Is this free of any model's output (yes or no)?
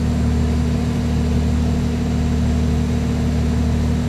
yes